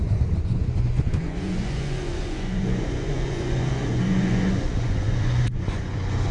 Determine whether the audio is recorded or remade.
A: remade